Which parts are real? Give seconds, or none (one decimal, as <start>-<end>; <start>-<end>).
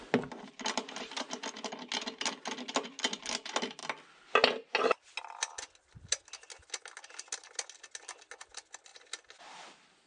0.0-10.1